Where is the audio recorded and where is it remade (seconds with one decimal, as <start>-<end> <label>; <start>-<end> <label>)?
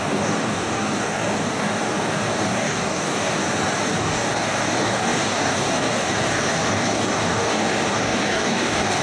0.0-3.4 remade; 3.4-4.0 recorded; 4.0-9.0 remade